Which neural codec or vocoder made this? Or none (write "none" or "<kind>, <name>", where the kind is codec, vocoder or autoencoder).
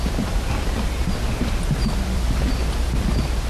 vocoder, BigVGAN v2